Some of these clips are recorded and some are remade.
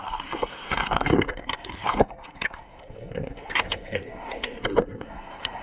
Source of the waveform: remade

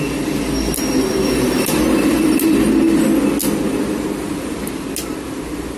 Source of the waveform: recorded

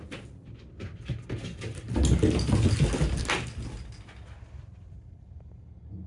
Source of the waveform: recorded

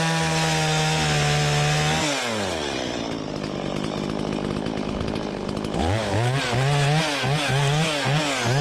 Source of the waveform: recorded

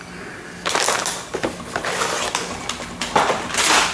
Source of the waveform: recorded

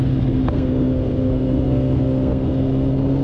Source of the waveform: remade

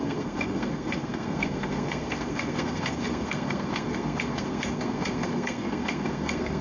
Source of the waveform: remade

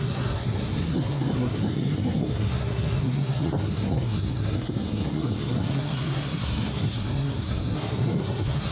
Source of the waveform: remade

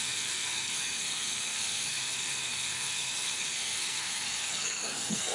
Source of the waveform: remade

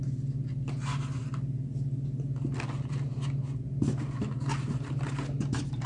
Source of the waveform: recorded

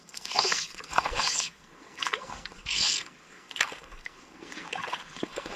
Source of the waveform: remade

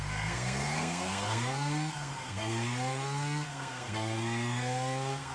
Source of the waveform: remade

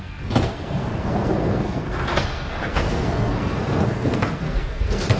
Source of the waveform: remade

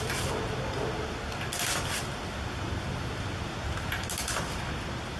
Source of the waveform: recorded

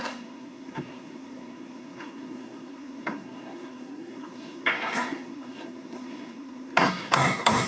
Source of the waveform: remade